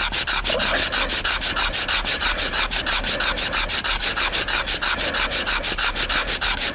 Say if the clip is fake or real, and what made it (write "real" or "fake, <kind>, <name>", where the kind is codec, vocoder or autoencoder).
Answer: real